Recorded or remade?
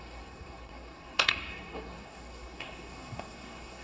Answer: remade